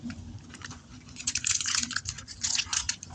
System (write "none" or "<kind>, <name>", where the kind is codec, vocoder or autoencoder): vocoder, Vocos